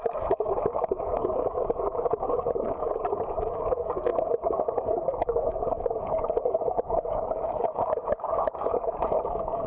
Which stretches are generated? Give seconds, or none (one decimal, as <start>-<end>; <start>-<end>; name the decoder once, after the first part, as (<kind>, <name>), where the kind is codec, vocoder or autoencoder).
0.0-9.7 (codec, DAC)